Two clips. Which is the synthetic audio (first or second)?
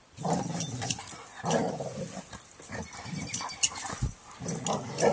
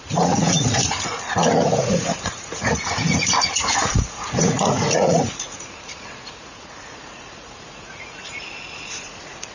second